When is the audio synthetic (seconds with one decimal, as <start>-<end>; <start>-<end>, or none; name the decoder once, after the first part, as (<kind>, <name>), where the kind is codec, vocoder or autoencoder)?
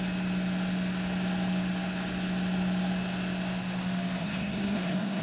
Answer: 4.2-5.2 (codec, SNAC)